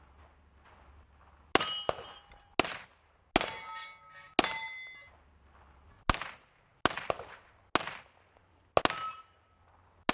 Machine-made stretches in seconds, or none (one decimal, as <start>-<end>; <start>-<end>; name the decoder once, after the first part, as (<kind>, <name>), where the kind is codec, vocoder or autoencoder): none